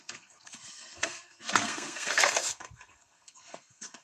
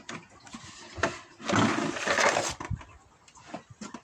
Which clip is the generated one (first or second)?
first